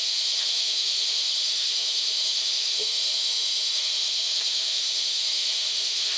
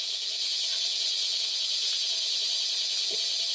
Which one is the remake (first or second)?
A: first